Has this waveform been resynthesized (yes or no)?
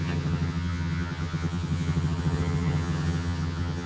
yes